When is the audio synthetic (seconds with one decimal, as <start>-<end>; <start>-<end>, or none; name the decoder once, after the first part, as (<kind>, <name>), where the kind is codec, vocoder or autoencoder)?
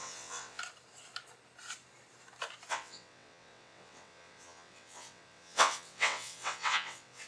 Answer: 0.0-0.6 (vocoder, WaveNeXt); 2.7-7.3